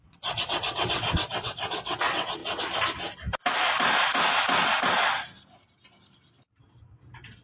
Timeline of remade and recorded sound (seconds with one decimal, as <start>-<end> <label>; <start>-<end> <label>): 0.0-2.4 remade; 2.4-6.6 recorded; 6.6-7.4 remade